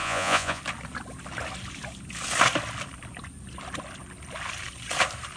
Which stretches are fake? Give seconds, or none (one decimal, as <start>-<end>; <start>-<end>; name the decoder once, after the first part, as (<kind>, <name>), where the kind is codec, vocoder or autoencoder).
0.0-0.6 (vocoder, Vocos)